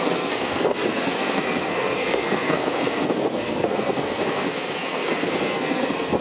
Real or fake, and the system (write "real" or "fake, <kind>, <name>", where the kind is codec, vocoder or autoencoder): fake, codec, SNAC